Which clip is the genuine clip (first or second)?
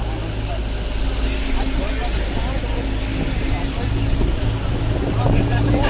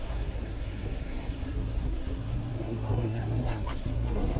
first